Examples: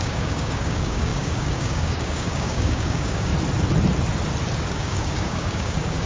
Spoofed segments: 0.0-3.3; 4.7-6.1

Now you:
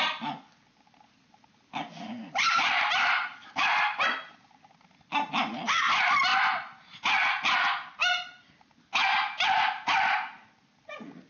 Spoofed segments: 0.0-6.3; 10.8-11.3

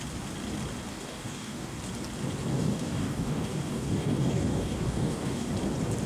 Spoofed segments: 0.9-1.8; 2.5-5.5

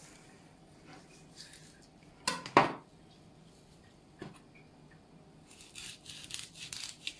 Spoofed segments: none

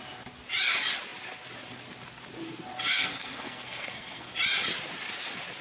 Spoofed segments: 2.8-4.3

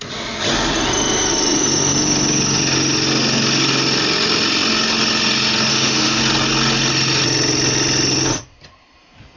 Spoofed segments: 5.7-6.2

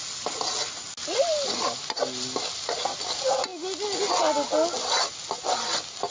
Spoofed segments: none

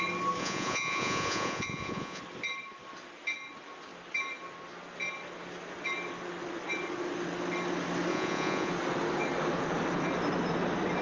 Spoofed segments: 0.4-2.2; 8.1-8.7